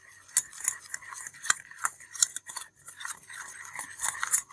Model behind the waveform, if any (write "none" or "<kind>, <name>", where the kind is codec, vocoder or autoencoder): none